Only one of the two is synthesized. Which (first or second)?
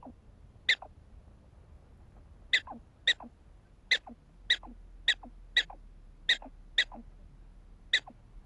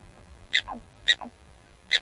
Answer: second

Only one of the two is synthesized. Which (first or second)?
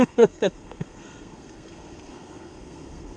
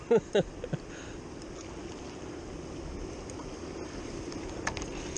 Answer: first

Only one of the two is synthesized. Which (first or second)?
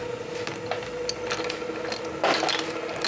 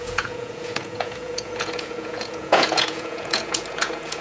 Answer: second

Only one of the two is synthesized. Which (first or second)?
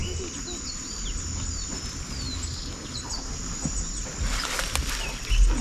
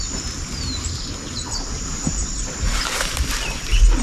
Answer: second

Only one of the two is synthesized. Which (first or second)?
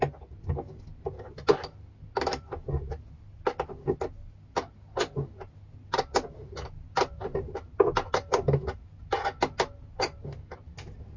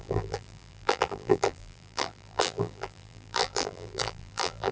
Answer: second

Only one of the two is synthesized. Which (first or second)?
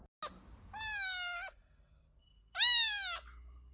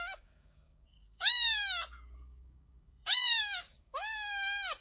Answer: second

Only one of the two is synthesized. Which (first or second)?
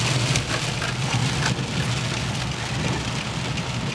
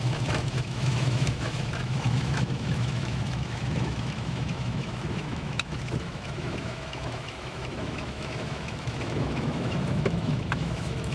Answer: second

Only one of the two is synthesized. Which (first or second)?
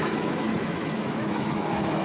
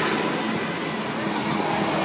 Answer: first